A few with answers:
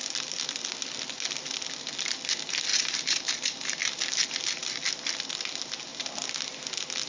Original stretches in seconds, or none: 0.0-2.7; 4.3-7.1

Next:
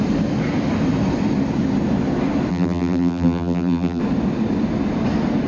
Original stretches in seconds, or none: 0.0-2.5; 4.0-5.5